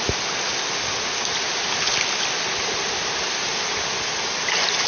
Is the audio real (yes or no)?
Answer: yes